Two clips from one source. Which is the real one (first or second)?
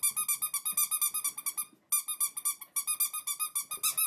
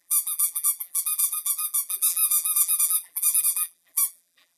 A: first